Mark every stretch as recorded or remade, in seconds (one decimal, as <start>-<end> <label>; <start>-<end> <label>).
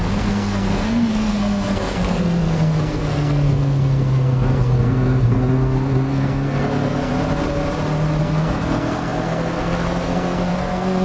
0.0-7.1 remade; 7.1-8.2 recorded; 8.2-11.0 remade